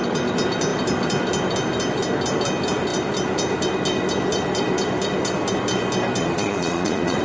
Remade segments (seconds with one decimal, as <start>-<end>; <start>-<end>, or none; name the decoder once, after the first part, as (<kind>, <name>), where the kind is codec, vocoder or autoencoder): 6.2-7.2 (vocoder, Vocos)